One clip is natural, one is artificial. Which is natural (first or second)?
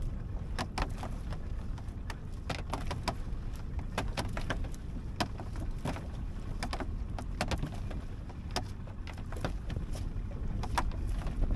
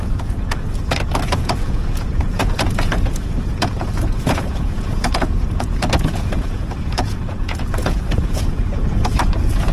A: first